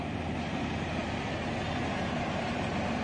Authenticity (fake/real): real